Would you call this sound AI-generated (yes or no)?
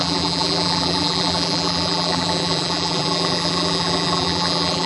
yes